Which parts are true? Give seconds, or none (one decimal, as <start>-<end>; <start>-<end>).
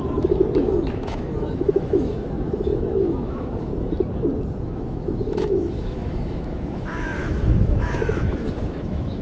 3.7-4.6